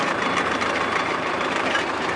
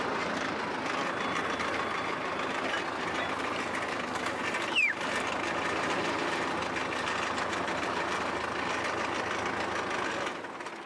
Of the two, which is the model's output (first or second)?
first